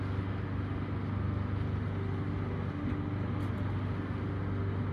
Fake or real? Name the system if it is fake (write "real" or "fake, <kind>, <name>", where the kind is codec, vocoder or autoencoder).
real